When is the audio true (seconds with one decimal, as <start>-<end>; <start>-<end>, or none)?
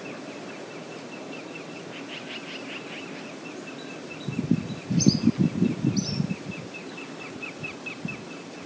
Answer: 0.0-8.7